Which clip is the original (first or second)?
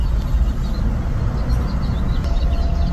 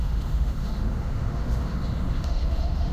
first